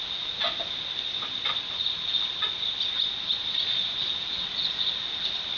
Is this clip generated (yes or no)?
no